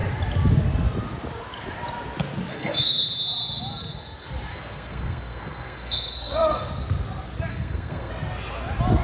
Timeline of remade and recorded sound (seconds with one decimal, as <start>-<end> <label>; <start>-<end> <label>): 0.0-2.5 recorded; 2.5-3.1 remade; 3.1-4.5 recorded; 4.5-6.7 remade; 6.7-7.5 recorded; 7.5-8.1 remade; 8.1-9.0 recorded